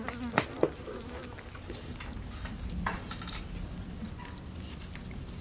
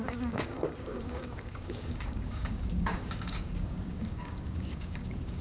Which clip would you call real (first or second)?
first